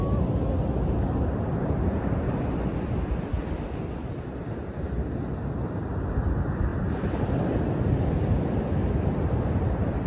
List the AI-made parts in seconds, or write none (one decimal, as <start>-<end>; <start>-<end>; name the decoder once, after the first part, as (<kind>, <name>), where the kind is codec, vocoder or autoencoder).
1.6-5.2 (vocoder, BigVGAN v2); 6.7-7.3

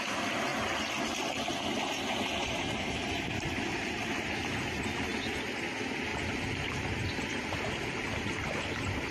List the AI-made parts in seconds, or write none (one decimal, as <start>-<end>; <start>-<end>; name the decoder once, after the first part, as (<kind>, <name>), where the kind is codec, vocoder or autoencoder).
2.4-4.3 (vocoder, BigVGAN v2)

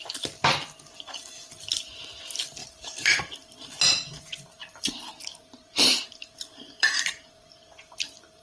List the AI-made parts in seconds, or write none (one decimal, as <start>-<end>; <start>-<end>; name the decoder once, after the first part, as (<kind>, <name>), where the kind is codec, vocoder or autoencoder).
2.6-3.2 (vocoder, BigVGAN v2); 4.6-7.5

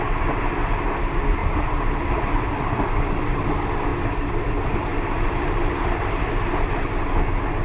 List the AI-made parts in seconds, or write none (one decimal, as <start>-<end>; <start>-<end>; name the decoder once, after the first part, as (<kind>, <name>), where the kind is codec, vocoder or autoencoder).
1.4-3.1 (vocoder, BigVGAN v2); 4.9-6.3

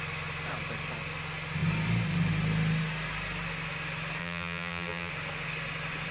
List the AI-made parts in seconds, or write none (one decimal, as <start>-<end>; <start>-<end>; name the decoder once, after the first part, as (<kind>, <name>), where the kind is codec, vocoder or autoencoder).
4.2-5.1 (vocoder, BigVGAN v2)

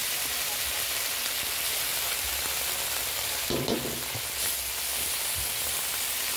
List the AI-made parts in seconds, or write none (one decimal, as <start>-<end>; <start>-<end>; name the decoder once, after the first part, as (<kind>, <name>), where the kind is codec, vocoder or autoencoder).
0.0-3.8 (vocoder, BigVGAN v2)

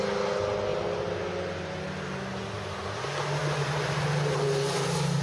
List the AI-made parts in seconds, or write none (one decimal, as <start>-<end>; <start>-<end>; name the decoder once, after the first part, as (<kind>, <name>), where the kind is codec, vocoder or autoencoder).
none